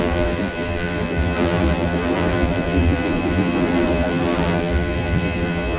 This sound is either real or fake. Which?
fake